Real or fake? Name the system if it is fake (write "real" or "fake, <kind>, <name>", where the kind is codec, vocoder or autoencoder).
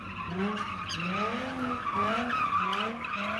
real